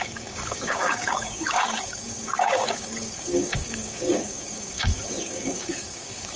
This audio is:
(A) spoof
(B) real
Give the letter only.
A